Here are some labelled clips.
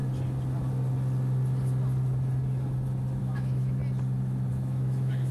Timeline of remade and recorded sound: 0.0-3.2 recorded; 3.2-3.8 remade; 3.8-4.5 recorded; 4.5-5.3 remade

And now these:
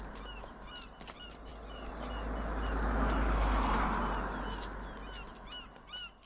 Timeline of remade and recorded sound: 0.0-6.3 recorded

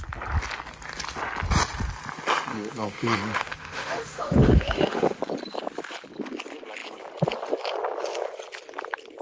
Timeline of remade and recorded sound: 0.0-2.5 recorded; 2.5-5.2 remade; 5.2-9.2 recorded

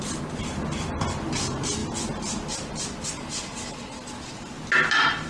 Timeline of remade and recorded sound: 0.0-5.3 recorded